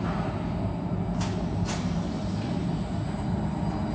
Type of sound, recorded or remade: recorded